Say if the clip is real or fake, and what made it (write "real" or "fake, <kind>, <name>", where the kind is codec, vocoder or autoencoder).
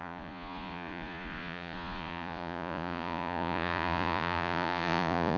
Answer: fake, vocoder, Vocos